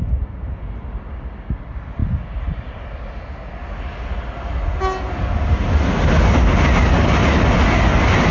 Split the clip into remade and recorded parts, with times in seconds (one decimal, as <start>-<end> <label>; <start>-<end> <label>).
0.0-8.3 recorded